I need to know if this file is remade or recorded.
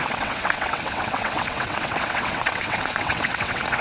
remade